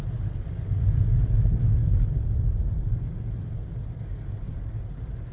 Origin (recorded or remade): recorded